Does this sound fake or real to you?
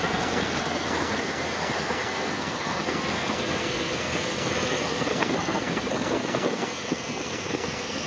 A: fake